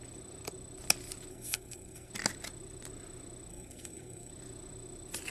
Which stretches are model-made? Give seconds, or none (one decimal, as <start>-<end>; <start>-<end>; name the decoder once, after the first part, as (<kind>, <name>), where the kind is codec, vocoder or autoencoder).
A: 1.3-2.1 (codec, SNAC); 3.5-4.3